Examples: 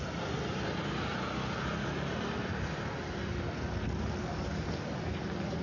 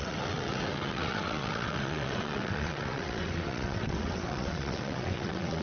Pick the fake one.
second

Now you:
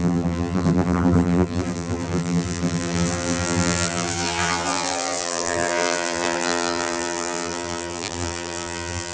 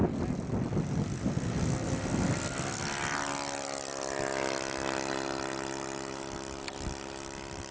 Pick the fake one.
first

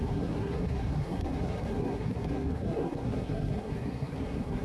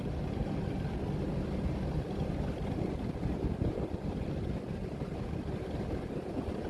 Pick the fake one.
first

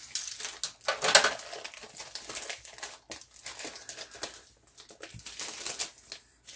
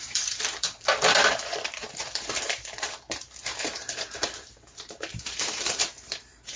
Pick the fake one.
second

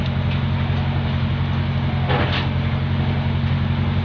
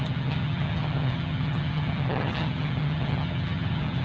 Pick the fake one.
second